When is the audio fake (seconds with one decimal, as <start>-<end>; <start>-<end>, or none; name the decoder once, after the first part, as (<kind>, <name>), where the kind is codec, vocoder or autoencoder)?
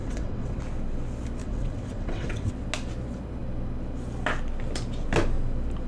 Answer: 0.0-0.6 (vocoder, WaveNeXt); 1.4-2.5